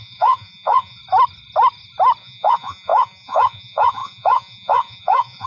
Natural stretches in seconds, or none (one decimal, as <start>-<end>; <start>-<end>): 1.0-2.2